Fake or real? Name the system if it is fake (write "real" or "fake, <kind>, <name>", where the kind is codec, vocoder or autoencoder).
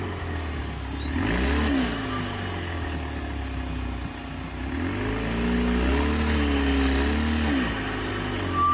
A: real